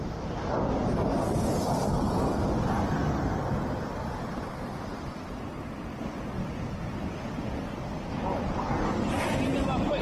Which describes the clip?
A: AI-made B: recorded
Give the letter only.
B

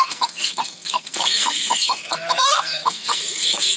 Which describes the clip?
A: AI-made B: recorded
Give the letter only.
A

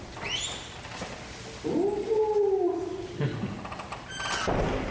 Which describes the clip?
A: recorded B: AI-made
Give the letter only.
A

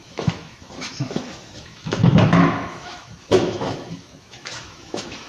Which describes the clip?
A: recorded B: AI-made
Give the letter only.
B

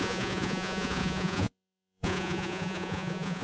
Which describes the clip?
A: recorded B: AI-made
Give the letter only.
B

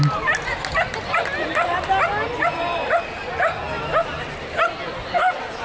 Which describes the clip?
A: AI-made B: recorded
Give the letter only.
B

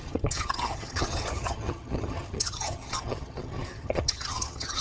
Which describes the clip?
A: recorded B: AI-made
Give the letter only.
B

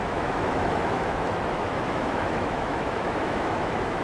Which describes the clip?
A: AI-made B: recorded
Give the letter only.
A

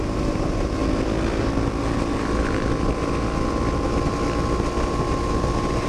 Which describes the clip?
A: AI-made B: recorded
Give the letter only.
B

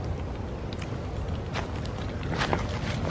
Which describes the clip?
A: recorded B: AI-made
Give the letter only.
A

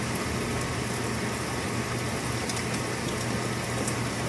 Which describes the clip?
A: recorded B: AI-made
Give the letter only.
A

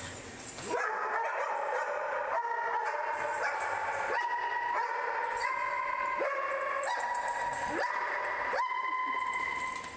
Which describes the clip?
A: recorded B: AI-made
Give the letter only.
A